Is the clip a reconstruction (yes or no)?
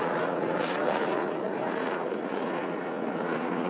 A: yes